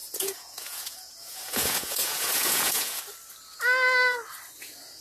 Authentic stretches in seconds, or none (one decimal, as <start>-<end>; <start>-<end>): 3.0-5.0